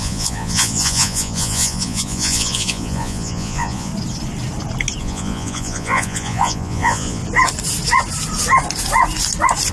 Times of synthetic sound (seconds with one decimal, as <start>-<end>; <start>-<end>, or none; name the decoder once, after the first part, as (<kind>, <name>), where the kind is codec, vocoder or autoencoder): 0.0-3.9 (vocoder, Vocos); 5.0-7.2